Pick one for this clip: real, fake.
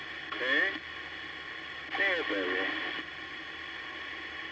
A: real